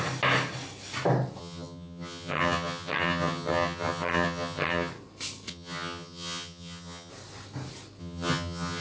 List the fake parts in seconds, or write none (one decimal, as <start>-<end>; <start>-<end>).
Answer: 1.4-4.9; 5.5-7.1; 8.0-8.8